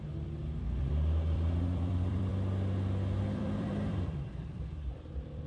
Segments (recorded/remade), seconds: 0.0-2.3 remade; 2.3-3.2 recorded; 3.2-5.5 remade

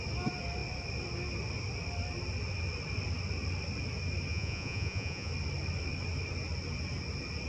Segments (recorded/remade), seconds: 0.0-4.3 recorded; 4.3-5.3 remade; 5.3-7.5 recorded

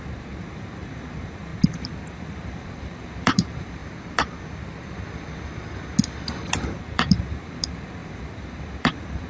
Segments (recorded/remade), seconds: 0.0-1.5 remade; 1.5-2.1 recorded; 2.1-3.8 remade; 3.8-6.8 recorded; 6.8-9.3 remade

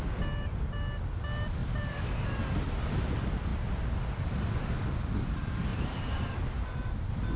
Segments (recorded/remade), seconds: 0.0-1.6 recorded; 1.6-2.1 remade; 2.1-5.7 recorded; 5.7-6.3 remade; 6.3-7.4 recorded

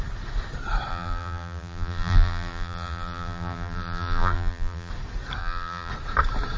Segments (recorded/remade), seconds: 0.0-0.9 recorded; 0.9-4.9 remade; 4.9-5.4 recorded; 5.4-5.9 remade; 5.9-6.6 recorded